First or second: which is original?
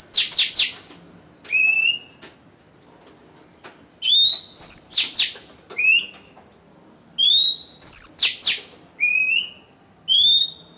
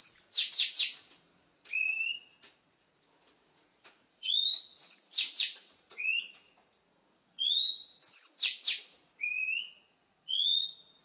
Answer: first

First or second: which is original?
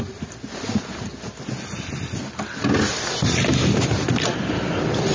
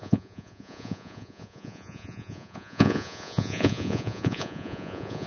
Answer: first